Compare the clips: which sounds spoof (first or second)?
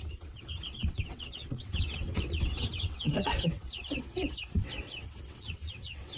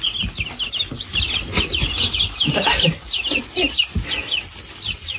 first